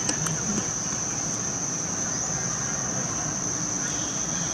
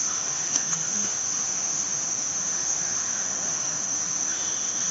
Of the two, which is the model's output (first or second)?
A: second